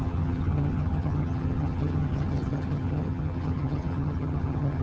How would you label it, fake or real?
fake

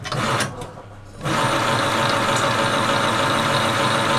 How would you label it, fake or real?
real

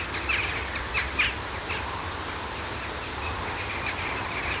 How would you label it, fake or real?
real